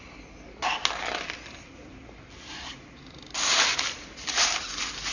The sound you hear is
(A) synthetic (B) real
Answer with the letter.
B